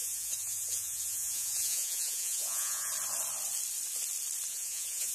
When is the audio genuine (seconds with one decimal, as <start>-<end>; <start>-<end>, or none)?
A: 2.9-4.5